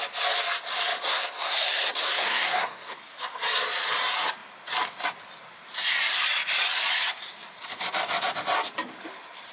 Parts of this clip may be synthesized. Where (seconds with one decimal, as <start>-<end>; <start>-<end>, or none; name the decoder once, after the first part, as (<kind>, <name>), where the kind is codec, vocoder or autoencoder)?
1.0-3.0 (codec, SNAC)

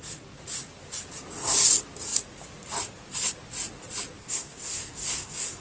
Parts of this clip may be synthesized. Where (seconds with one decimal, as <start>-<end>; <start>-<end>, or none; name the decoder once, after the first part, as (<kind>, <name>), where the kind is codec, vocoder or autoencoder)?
4.2-5.6 (codec, SNAC)

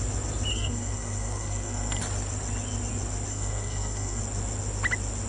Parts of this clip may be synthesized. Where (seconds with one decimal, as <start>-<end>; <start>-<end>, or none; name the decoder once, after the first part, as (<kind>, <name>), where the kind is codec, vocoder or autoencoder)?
0.5-2.0 (codec, SNAC); 3.3-4.2

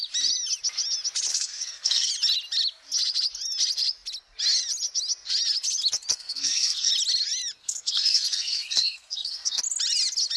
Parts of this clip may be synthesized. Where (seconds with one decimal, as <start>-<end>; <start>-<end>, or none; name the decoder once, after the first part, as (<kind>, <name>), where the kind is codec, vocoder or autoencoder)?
1.3-2.1 (codec, SNAC); 6.1-6.9; 7.6-9.6